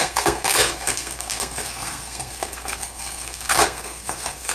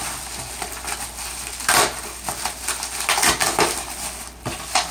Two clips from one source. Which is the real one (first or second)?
second